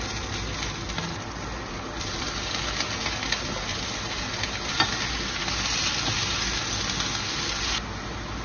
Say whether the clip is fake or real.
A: real